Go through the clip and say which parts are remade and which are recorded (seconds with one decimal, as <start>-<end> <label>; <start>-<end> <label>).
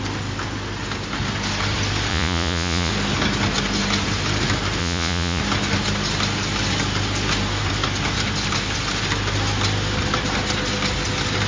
0.0-2.1 recorded; 2.1-2.9 remade; 2.9-4.8 recorded; 4.8-5.4 remade; 5.4-11.5 recorded